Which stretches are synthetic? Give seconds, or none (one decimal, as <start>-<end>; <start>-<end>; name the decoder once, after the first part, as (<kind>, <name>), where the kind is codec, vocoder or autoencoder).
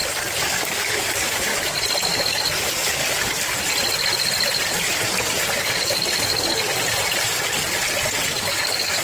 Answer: 0.6-1.5 (codec, DAC); 2.3-3.0; 5.6-6.7; 8.4-9.0